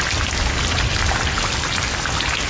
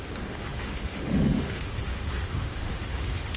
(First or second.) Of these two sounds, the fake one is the second